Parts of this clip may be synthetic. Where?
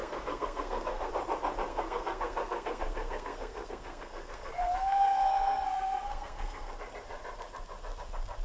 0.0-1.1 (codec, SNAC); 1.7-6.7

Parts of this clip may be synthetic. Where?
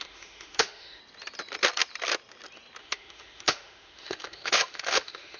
0.0-1.0 (autoencoder, DAC-VAE); 2.8-5.4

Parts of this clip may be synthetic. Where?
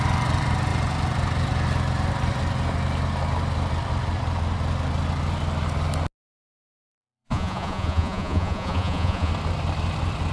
6.8-9.3 (vocoder, Vocos)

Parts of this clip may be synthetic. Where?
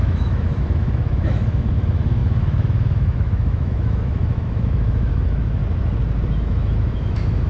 0.0-5.6 (autoencoder, DAC-VAE); 6.3-7.5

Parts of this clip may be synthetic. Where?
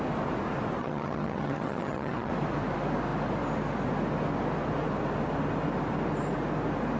0.8-2.3 (vocoder, HiFi-GAN)